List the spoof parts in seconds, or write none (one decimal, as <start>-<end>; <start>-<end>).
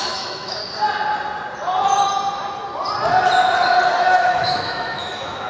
0.0-0.6; 3.9-5.5